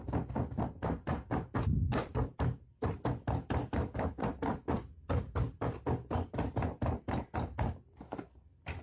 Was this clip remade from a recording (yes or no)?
no